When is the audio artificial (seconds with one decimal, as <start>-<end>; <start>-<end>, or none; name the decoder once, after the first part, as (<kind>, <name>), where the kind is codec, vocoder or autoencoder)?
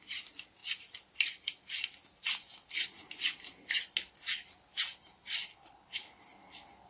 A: 5.5-6.2 (codec, HILCodec)